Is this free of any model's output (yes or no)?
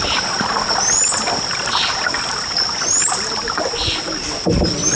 yes